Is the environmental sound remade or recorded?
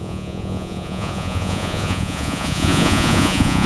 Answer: remade